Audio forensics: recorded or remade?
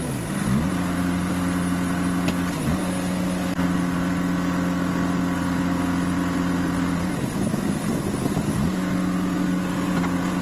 recorded